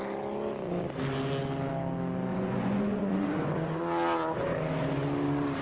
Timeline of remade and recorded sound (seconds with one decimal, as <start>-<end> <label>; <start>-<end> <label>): 0.0-2.3 recorded; 2.3-3.8 remade; 3.8-5.6 recorded